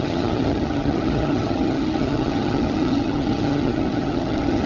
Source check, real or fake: fake